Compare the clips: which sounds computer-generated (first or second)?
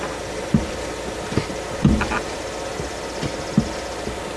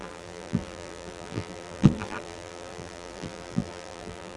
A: second